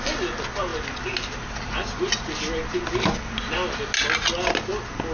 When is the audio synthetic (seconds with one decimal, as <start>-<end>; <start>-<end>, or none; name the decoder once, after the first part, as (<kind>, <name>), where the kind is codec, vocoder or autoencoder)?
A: none

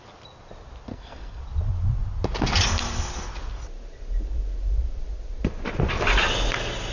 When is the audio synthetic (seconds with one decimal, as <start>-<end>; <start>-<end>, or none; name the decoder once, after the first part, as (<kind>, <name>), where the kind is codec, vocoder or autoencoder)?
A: 0.9-1.4 (codec, SNAC)

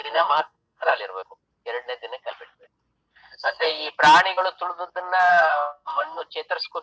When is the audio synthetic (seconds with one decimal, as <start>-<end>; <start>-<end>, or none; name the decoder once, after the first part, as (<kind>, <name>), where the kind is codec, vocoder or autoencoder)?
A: 0.0-1.0 (codec, SNAC); 3.2-3.9; 5.3-6.2

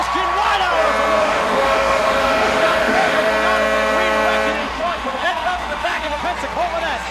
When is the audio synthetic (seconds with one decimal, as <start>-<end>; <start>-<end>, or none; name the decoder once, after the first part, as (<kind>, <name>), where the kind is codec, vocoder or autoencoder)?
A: 1.2-3.3 (autoencoder, DAC-VAE); 4.6-6.2

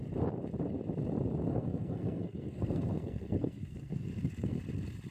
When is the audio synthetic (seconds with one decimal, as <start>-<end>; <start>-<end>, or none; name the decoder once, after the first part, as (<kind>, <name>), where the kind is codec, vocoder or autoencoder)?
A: 1.5-4.6 (codec, SNAC)

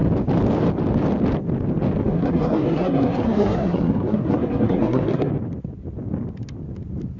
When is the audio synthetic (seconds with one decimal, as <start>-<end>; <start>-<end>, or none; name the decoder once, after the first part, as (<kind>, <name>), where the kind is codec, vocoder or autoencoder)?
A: 2.0-5.3 (codec, SNAC)